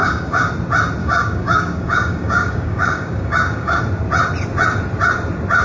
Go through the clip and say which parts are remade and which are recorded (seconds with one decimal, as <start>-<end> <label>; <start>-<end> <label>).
0.0-0.5 remade; 0.5-1.0 recorded; 1.0-3.8 remade; 3.8-5.6 recorded